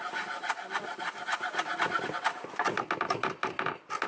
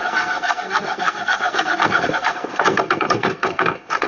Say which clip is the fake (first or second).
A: second